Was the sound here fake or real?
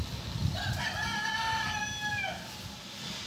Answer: real